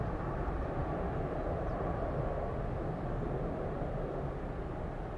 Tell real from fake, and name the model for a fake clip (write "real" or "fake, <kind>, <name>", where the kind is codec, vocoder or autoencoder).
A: real